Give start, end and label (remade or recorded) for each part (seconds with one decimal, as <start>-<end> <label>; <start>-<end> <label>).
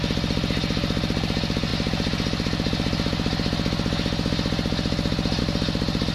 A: 0.0-6.1 recorded